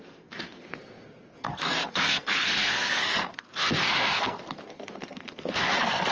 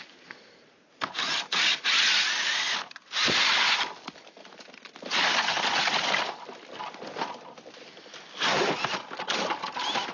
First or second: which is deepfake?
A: first